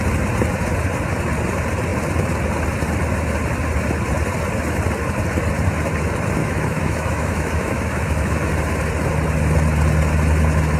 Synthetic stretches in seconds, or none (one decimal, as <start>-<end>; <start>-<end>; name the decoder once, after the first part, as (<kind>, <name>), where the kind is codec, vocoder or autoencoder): 6.4-8.5 (autoencoder, DAC-VAE)